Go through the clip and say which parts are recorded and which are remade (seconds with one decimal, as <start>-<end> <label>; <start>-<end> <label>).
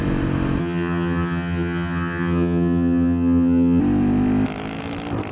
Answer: 0.0-0.6 recorded; 0.6-3.8 remade; 3.8-5.3 recorded